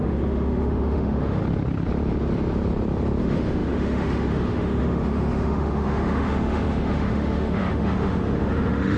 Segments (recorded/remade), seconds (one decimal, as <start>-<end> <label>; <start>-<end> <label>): 0.0-1.4 remade; 1.4-3.2 recorded; 3.2-9.0 remade